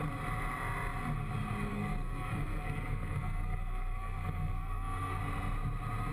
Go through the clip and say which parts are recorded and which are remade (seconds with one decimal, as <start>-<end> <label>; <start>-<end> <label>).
0.0-1.7 recorded; 1.7-5.2 remade; 5.2-6.1 recorded